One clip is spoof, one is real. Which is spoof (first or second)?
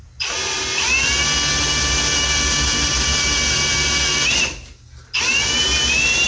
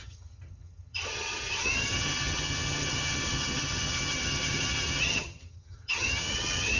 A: second